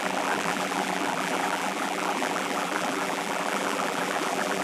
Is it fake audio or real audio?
fake